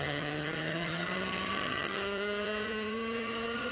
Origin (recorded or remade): remade